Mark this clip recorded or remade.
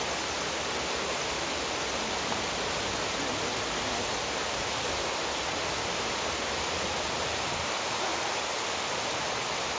recorded